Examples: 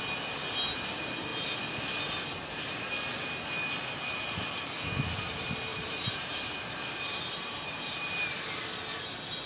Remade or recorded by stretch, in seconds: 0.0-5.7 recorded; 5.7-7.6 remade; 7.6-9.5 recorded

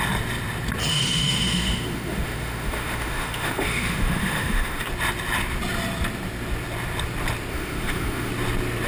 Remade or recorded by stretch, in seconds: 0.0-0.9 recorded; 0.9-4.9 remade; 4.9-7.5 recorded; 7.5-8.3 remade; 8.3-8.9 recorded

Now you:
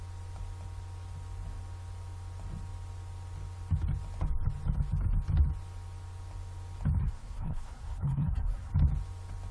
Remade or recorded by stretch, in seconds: 0.0-7.0 recorded; 7.0-8.7 remade; 8.7-9.5 recorded

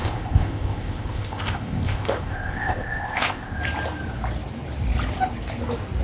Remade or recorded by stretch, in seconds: 0.0-3.6 remade; 3.6-6.0 recorded